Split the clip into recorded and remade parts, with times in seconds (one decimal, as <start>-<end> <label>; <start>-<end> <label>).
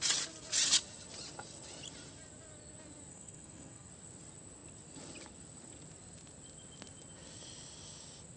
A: 0.0-3.1 recorded; 3.1-3.9 remade; 3.9-8.4 recorded